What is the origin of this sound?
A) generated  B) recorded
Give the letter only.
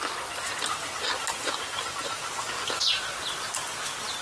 B